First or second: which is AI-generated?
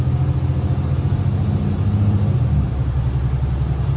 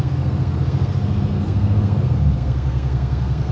second